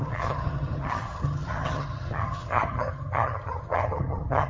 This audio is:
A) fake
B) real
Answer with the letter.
A